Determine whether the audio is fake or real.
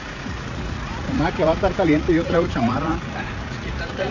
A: fake